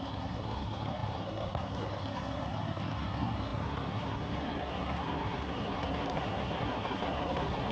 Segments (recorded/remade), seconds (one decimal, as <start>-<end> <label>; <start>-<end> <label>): 0.0-7.7 remade